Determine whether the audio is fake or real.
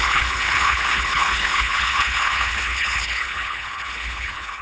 fake